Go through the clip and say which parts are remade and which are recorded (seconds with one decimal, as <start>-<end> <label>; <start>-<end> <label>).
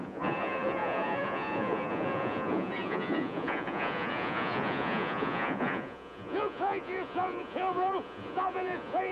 0.0-9.1 remade